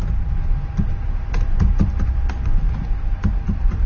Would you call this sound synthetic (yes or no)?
no